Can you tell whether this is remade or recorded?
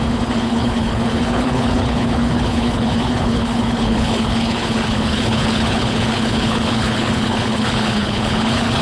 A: remade